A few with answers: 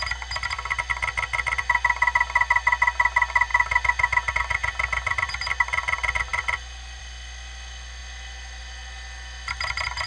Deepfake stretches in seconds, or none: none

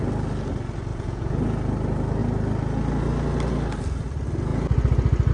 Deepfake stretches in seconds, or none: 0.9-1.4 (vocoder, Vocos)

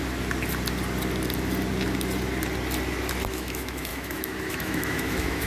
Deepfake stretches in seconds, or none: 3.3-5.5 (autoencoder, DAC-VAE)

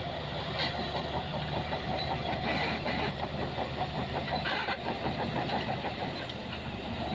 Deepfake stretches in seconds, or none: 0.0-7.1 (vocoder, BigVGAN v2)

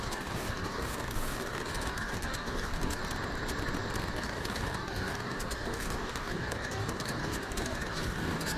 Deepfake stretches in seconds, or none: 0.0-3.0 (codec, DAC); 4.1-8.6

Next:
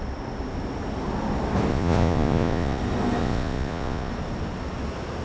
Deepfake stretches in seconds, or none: 1.7-2.8 (vocoder, Vocos); 3.2-4.1

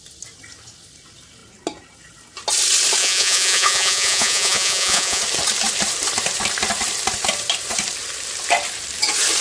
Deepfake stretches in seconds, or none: 3.0-5.2 (vocoder, Vocos)